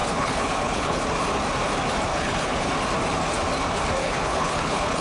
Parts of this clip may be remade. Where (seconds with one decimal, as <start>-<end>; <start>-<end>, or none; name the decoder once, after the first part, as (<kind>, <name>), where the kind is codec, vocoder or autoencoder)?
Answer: 0.0-1.0 (codec, HILCodec); 2.1-2.7; 4.0-5.0